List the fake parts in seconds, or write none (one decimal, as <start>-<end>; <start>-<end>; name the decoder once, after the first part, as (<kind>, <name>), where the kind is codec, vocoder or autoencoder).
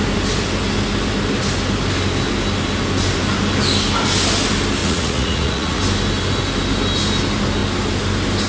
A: 4.8-5.8 (vocoder, Vocos)